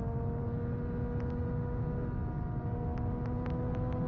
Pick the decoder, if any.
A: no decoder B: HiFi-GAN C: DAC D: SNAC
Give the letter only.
A